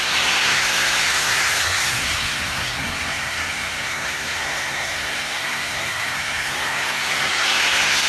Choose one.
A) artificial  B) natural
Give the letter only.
A